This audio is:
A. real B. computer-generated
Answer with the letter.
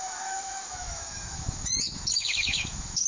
B